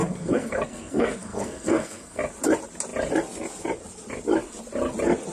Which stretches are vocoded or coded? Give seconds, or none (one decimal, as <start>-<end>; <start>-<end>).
0.0-2.2